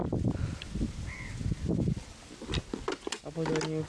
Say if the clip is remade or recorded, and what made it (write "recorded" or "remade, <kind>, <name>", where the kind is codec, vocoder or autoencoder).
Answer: recorded